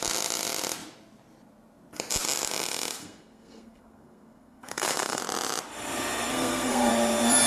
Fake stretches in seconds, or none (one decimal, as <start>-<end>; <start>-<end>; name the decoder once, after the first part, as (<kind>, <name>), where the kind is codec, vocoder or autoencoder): 3.0-5.2 (codec, SNAC); 6.3-6.9